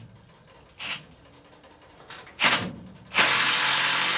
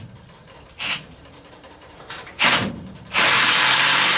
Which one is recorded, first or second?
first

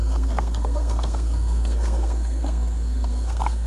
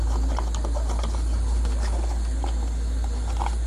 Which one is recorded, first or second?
second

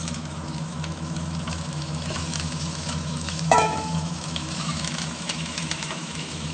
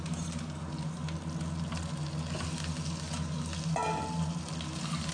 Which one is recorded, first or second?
second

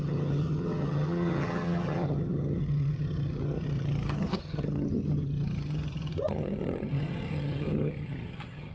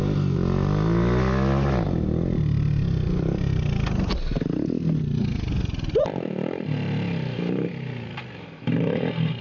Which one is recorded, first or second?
second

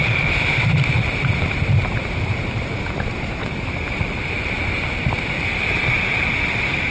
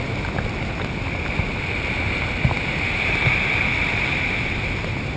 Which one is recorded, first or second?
second